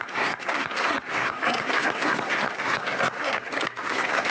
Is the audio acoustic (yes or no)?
no